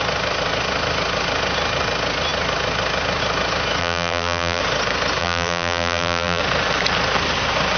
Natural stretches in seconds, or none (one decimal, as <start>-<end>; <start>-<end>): 0.0-3.8; 4.6-5.2; 6.4-7.8